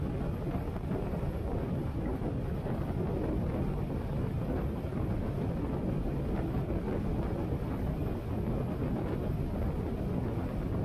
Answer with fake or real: real